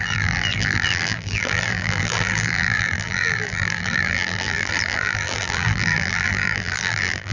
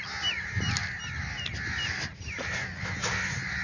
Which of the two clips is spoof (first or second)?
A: first